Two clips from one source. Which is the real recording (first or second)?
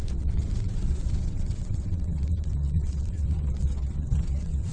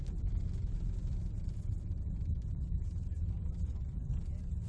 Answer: second